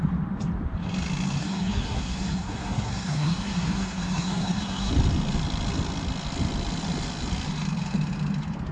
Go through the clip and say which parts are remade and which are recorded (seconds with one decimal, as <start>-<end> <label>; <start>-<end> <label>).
0.0-1.4 recorded; 1.4-4.9 remade; 4.9-8.7 recorded